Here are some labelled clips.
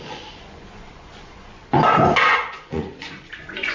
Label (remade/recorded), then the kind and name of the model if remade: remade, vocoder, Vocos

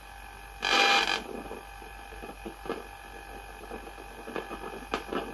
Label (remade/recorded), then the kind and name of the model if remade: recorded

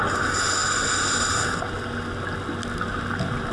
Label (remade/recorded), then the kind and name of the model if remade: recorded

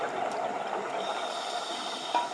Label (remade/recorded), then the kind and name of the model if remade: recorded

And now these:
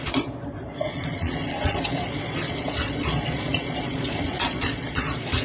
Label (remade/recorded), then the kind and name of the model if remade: remade, vocoder, Vocos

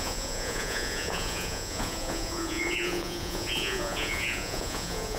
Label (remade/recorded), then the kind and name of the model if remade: remade, vocoder, Vocos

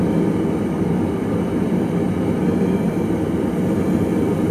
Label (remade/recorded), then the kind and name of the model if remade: recorded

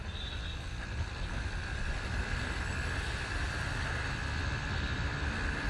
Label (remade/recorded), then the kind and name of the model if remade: recorded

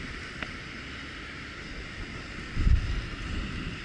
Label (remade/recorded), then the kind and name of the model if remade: recorded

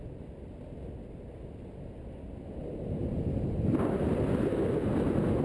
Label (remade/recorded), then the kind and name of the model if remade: recorded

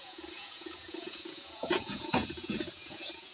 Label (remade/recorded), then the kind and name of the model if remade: remade, vocoder, Vocos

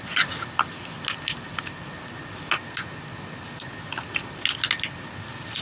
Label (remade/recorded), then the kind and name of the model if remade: recorded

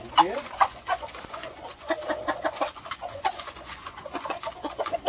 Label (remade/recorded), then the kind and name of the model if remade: remade, vocoder, Vocos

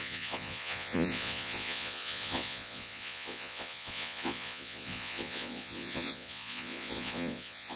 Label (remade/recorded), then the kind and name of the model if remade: remade, vocoder, Vocos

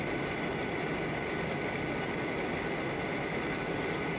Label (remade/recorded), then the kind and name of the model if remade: recorded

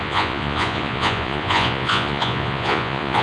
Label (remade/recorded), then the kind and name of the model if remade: remade, vocoder, Vocos